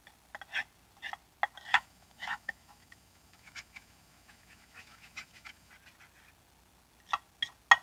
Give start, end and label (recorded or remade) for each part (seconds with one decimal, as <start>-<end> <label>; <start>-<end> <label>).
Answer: 0.0-1.7 recorded; 1.7-5.7 remade; 5.7-7.8 recorded